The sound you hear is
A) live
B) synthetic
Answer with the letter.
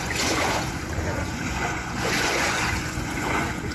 B